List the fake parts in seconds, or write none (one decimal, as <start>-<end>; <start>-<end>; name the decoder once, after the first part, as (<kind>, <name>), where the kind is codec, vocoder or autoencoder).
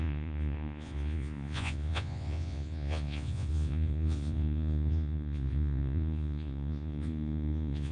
0.0-7.9 (vocoder, Vocos)